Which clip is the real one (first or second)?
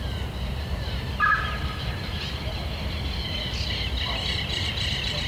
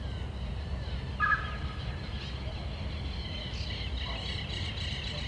second